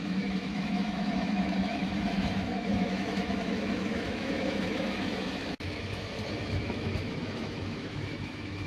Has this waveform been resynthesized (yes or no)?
yes